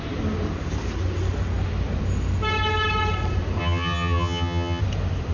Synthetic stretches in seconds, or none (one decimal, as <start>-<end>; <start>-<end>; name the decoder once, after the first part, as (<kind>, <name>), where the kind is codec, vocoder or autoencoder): 3.6-4.8 (vocoder, HiFi-GAN)